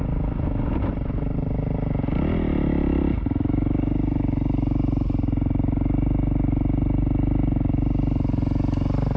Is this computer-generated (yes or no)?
no